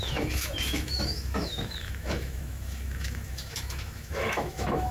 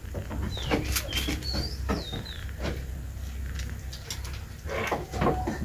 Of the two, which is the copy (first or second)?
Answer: first